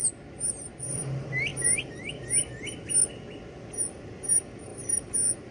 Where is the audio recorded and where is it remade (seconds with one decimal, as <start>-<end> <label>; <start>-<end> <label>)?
0.0-5.5 recorded